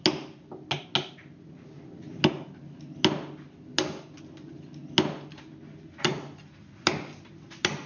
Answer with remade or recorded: recorded